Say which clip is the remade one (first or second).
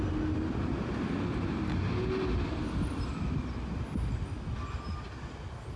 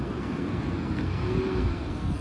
second